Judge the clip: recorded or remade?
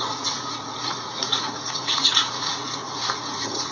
remade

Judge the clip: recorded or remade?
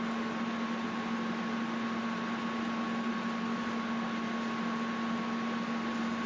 recorded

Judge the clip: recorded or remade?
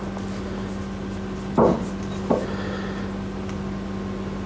recorded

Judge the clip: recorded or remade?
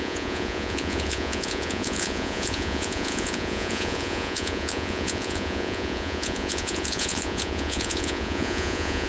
remade